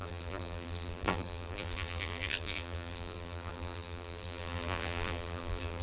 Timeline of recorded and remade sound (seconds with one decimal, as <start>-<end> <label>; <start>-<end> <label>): 0.0-5.8 remade